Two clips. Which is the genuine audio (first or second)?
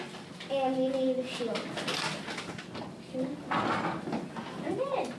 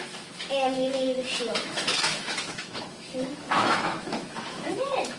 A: first